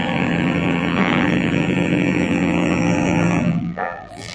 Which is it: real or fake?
fake